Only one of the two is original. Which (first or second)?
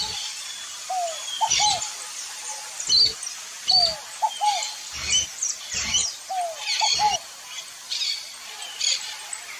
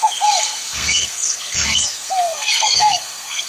first